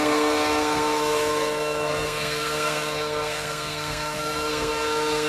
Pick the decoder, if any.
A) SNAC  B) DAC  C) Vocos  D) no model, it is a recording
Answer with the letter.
A